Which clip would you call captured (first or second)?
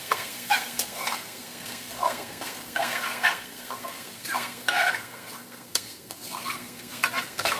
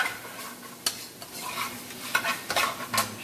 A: second